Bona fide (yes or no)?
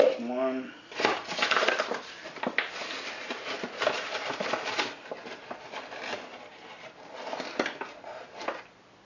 yes